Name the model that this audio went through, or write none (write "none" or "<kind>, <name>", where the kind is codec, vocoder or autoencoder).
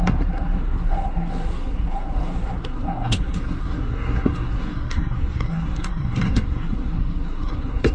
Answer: codec, SNAC